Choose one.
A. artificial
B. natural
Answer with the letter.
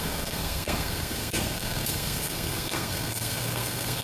A